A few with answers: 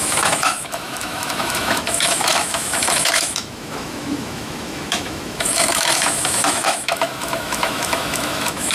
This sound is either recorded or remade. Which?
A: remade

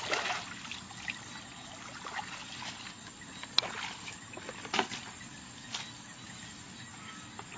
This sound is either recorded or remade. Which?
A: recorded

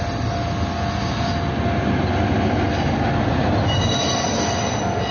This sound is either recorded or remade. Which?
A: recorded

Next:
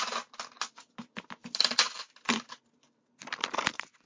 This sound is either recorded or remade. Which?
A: recorded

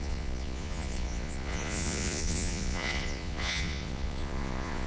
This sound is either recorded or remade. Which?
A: remade